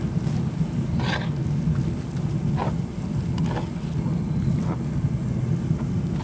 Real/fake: real